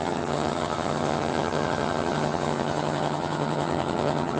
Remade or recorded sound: remade